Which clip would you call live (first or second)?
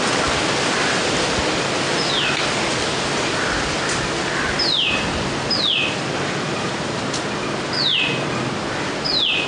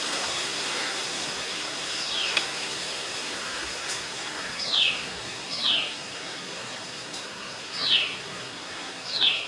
first